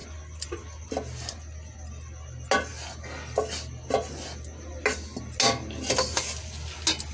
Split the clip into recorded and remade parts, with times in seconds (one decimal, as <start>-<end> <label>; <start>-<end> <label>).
0.0-7.1 recorded